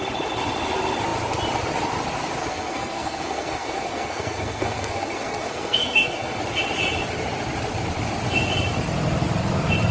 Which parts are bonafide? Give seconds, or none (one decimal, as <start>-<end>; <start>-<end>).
0.0-2.4; 6.4-9.9